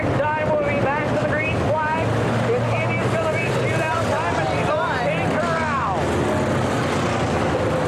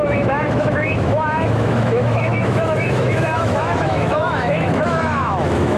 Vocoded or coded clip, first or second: second